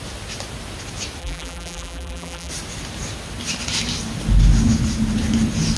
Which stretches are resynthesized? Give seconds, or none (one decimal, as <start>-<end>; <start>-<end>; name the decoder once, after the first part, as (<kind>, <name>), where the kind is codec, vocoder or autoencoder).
1.2-2.5 (vocoder, BigVGAN v2)